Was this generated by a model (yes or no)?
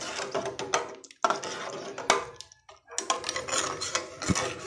no